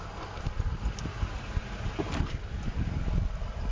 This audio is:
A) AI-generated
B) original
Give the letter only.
B